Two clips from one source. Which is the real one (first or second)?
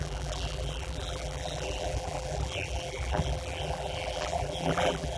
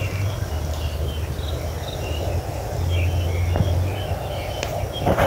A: second